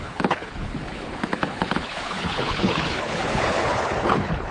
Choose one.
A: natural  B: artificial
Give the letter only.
B